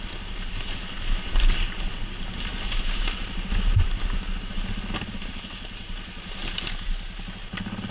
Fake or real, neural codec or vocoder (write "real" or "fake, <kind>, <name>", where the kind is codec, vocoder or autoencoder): real